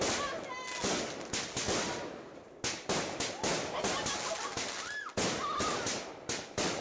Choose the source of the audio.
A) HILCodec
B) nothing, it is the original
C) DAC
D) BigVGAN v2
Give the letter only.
B